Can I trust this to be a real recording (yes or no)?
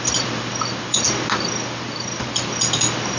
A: yes